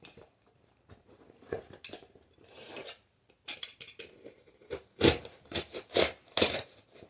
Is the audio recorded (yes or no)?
no